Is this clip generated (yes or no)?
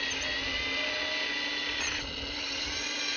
no